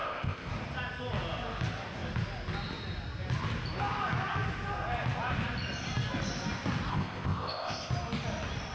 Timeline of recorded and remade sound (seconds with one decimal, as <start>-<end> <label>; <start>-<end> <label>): 0.0-0.5 remade; 0.5-6.9 recorded; 6.9-7.9 remade; 7.9-8.7 recorded